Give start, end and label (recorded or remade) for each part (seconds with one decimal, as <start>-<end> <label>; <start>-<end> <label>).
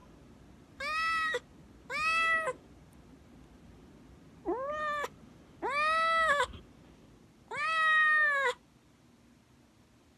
0.0-10.2 recorded